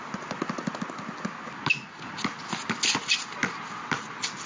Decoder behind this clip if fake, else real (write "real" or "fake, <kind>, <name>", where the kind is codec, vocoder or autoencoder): real